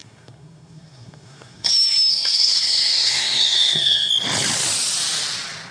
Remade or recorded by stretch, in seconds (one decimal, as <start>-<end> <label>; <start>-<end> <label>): 0.0-1.7 remade; 1.7-2.1 recorded; 2.1-4.1 remade; 4.1-5.7 recorded